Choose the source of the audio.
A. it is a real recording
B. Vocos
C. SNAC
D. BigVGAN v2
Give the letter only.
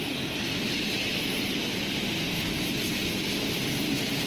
A